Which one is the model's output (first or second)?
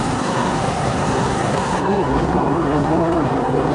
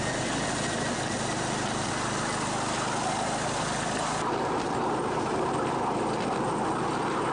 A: first